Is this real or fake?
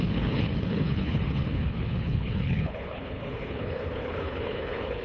fake